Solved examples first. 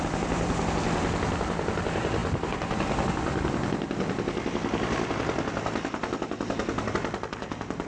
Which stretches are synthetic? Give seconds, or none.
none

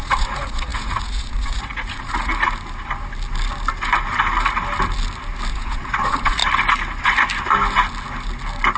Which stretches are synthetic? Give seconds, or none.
0.0-2.3 (vocoder, Vocos); 5.5-6.4

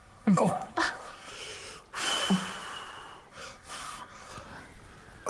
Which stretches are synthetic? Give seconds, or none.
0.0-1.3 (codec, SNAC); 3.3-4.3

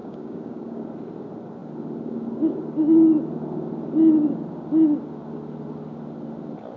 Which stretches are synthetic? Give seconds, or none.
0.0-0.8 (codec, DAC)

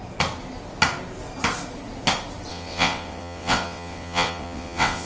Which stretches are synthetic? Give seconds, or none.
2.5-5.1 (vocoder, WaveNeXt)

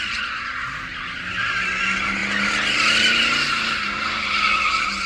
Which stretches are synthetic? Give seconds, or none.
none

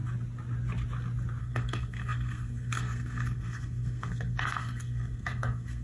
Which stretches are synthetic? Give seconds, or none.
1.4-5.8 (codec, SNAC)

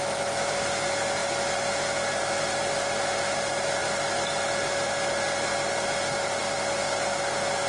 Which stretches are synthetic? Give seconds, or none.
none